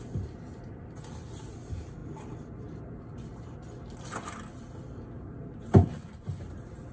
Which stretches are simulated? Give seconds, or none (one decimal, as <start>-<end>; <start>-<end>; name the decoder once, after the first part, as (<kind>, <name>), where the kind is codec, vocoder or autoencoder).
5.8-6.4 (vocoder, Vocos)

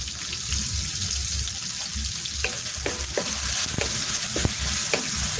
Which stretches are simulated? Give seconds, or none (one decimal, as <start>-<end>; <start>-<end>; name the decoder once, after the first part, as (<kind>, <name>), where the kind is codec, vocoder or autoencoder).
none

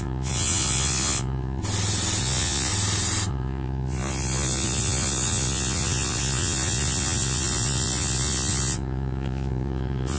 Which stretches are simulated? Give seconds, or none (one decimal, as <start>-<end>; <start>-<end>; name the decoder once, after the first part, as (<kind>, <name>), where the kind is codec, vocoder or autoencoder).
0.0-1.6 (vocoder, Vocos); 2.2-2.7; 3.3-10.2

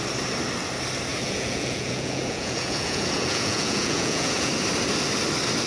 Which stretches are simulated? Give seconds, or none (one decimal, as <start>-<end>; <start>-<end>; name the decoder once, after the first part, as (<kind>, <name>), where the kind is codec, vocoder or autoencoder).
1.1-4.5 (vocoder, Vocos)